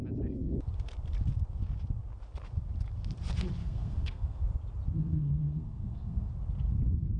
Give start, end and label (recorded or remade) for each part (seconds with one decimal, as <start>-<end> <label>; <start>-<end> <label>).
0.0-3.6 recorded; 3.6-4.4 remade; 4.4-5.0 recorded; 5.0-6.3 remade; 6.3-7.2 recorded